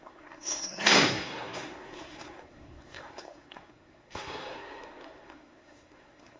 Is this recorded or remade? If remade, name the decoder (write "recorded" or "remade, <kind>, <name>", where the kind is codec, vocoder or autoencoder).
remade, codec, SNAC